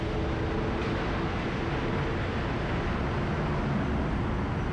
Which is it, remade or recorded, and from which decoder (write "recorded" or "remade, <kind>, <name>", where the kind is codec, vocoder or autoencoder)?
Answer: recorded